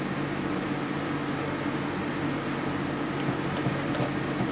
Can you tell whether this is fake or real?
real